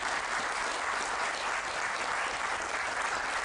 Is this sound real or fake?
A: real